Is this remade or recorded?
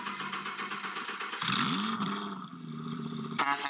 remade